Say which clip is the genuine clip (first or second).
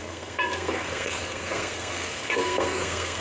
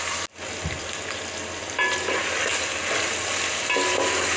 second